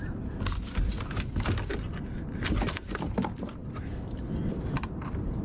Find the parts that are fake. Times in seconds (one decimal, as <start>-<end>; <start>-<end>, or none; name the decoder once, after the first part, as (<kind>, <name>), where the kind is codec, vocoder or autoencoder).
none